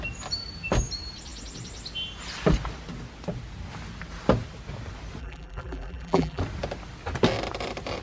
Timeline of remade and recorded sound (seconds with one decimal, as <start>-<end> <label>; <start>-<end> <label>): 0.0-5.2 recorded; 5.2-6.4 remade; 6.4-8.0 recorded